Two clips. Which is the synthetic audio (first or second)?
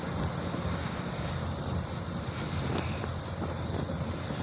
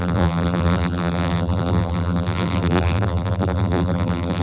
second